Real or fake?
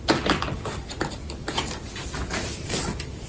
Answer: real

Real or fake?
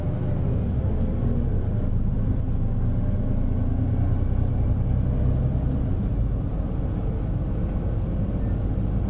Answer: real